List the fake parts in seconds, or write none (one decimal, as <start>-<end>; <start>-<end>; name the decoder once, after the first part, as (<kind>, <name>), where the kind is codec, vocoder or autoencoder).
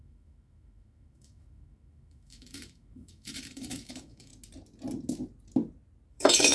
0.0-4.3 (autoencoder, DAC-VAE); 6.1-6.5